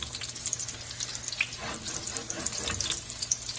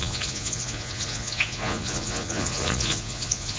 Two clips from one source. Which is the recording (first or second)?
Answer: first